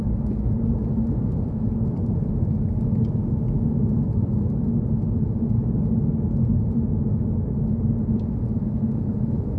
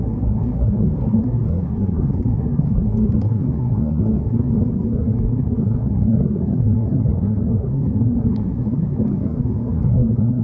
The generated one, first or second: second